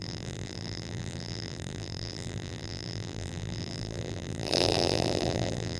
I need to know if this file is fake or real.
fake